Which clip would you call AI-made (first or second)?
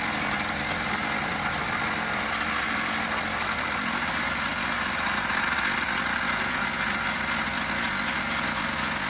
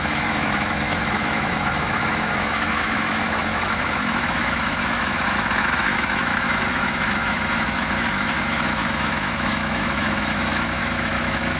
second